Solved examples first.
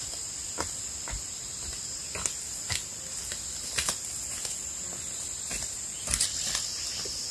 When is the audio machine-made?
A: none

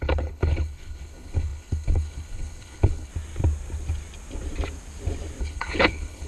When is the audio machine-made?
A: 0.0-3.1 (codec, HILCodec); 5.4-6.3

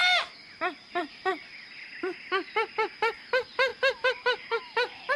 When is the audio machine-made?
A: none

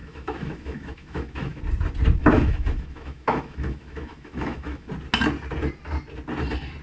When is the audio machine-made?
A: 0.0-1.6 (autoencoder, DAC-VAE); 2.2-4.9

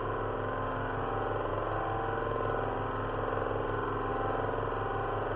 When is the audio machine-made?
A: none